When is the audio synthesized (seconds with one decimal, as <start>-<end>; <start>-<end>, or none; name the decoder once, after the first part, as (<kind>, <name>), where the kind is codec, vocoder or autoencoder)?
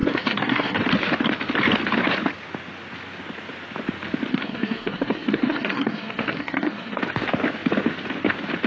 0.0-0.8 (codec, SNAC); 4.3-7.0